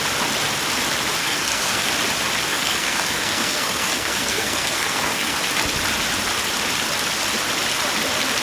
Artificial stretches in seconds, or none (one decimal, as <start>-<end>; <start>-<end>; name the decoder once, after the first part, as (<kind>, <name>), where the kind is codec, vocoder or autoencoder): 1.2-1.9 (codec, SNAC); 2.5-5.4